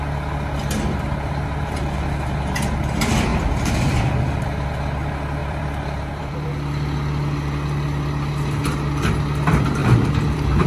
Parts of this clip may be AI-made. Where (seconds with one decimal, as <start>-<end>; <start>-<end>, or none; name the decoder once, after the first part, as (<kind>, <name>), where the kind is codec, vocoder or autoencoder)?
3.3-4.3 (vocoder, BigVGAN v2); 5.4-6.5; 9.8-10.7

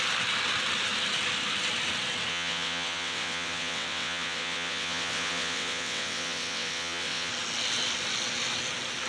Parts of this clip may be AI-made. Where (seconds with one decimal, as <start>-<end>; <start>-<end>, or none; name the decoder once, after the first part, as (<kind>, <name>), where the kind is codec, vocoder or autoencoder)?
2.3-7.3 (vocoder, WaveNeXt)

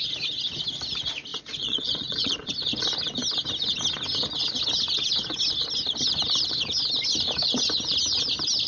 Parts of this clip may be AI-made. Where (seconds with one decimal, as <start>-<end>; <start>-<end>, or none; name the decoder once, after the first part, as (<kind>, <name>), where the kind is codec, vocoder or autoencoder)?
1.3-2.5 (vocoder, Vocos)

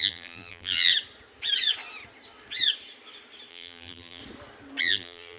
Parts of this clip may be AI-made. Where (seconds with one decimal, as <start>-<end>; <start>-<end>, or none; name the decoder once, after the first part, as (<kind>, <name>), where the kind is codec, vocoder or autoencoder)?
0.0-0.9 (vocoder, BigVGAN v2); 3.5-4.2; 4.8-5.4

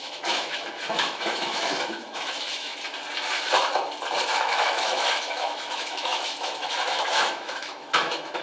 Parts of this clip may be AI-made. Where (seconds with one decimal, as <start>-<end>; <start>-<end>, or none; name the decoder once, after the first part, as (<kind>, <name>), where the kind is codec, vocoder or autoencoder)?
0.0-2.7 (autoencoder, DAC-VAE); 4.3-8.4